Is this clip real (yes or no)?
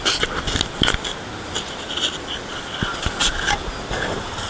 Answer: yes